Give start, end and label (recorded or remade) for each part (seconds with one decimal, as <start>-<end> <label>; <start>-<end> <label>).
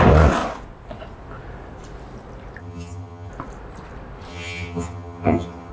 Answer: 0.0-2.6 recorded; 2.6-3.3 remade; 3.3-4.3 recorded; 4.3-5.7 remade